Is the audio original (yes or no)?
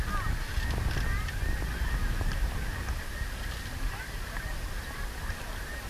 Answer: yes